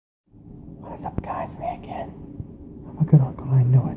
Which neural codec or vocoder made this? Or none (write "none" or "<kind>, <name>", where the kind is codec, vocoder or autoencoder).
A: none